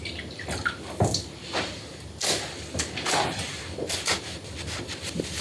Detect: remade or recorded recorded